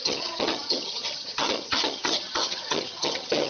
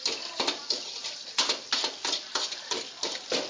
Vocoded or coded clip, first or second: first